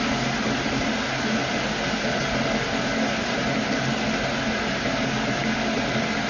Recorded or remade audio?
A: recorded